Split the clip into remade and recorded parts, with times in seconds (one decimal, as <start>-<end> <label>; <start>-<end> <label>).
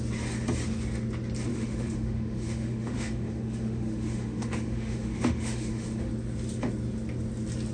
0.0-1.5 recorded; 1.5-6.1 remade; 6.1-7.7 recorded